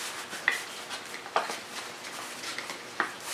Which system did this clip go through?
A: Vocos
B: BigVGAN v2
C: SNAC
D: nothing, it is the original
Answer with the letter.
B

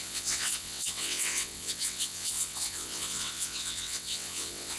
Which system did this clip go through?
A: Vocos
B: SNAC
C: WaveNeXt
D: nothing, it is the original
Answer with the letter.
C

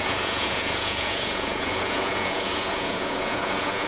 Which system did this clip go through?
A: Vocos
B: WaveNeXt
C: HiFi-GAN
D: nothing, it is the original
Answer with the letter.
A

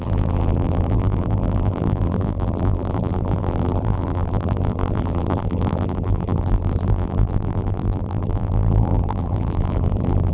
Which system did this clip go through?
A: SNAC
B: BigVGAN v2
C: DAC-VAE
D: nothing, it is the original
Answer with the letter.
B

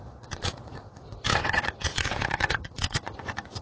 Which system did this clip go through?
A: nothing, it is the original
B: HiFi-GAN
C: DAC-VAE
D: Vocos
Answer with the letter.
D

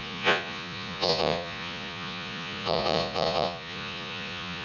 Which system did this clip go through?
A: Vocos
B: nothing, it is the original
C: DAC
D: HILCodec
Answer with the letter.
A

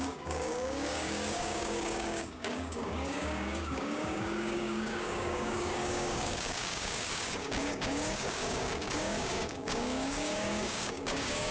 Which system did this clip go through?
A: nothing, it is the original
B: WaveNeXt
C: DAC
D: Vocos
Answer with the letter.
C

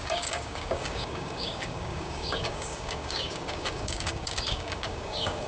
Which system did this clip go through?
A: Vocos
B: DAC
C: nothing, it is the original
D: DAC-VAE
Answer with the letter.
B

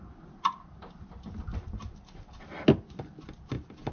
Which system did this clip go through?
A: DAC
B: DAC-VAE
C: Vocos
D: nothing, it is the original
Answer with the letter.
D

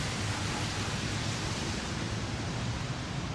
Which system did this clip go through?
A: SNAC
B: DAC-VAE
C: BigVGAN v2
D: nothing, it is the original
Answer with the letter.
C